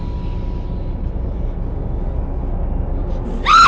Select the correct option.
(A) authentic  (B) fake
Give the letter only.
A